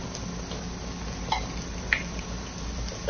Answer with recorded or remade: recorded